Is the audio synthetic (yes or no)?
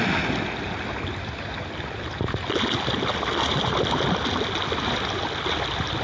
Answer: no